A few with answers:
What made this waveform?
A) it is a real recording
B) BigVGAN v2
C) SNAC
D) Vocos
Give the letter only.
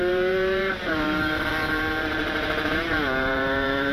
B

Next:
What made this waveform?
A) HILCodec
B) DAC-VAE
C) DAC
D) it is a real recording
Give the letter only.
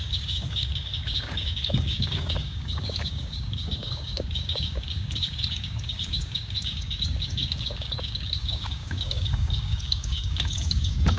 C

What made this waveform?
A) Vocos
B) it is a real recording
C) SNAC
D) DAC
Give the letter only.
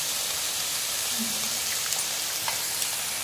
B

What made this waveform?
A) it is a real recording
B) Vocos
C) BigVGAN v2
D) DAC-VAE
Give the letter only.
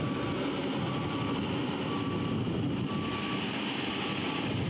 A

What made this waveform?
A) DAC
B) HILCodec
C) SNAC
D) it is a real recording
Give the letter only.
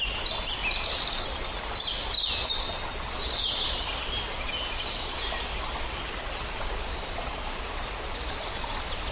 D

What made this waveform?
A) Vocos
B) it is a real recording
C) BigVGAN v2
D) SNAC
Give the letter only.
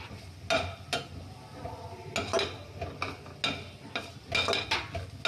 B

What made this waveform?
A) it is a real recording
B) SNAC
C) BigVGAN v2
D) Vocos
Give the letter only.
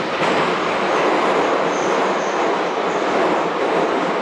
A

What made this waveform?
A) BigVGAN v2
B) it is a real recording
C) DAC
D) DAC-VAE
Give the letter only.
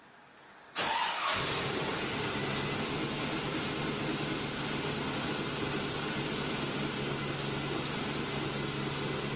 B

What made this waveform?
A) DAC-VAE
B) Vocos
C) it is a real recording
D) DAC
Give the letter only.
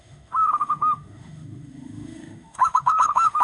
A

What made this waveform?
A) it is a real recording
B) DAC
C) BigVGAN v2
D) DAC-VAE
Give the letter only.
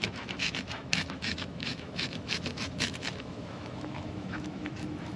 D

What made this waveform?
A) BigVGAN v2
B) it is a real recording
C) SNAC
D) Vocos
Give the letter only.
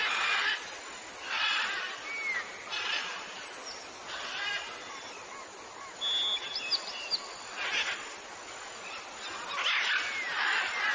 B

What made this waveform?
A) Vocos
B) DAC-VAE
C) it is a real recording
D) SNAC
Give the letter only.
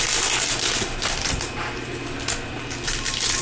C